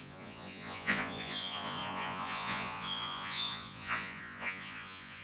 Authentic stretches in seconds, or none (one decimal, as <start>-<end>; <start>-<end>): none